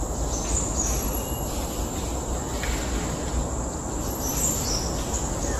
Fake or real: fake